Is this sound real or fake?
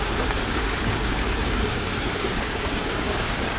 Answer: fake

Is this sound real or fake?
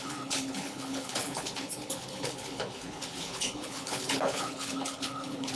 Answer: fake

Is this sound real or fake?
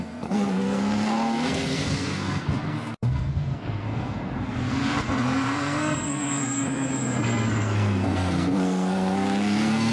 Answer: fake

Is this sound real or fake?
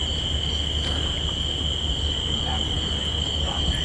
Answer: real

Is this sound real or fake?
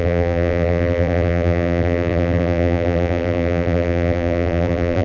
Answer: fake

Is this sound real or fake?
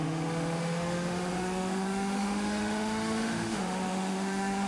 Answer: fake